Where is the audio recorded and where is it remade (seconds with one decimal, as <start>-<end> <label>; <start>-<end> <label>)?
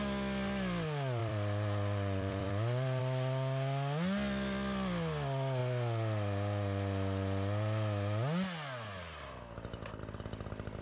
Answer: 0.0-1.2 recorded; 1.2-3.0 remade; 3.0-10.8 recorded